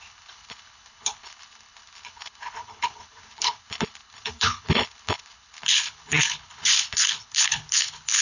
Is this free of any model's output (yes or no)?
no